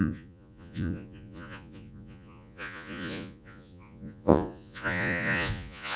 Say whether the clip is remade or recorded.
remade